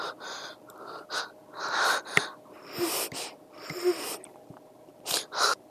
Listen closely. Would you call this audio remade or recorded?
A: remade